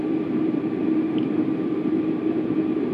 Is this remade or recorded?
remade